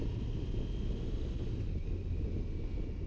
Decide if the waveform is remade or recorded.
recorded